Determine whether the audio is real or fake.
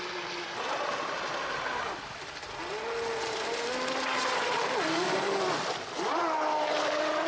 real